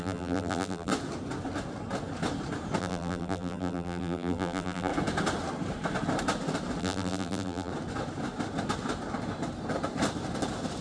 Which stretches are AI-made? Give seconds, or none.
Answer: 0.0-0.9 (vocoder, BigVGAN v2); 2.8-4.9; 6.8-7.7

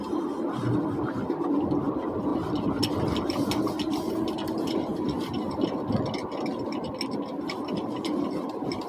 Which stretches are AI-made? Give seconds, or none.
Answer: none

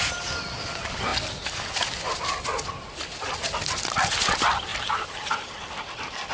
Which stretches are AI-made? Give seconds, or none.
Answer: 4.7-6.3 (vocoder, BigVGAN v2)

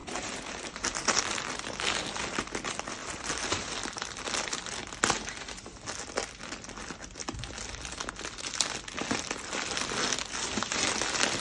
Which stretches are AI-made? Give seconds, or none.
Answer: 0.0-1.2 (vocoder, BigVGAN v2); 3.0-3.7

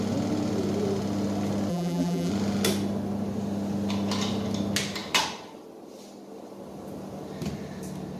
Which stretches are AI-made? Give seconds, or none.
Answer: 1.7-2.3 (vocoder, BigVGAN v2)

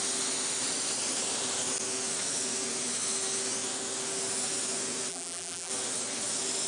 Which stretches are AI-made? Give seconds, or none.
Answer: 5.1-5.7 (vocoder, BigVGAN v2)

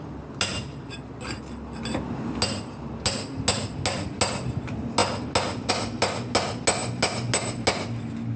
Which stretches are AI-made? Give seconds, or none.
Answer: 0.5-1.1 (vocoder, BigVGAN v2)

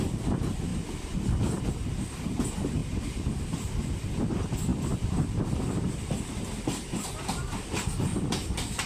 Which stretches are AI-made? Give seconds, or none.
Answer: 0.7-1.6 (vocoder, BigVGAN v2); 4.7-6.4; 8.1-8.9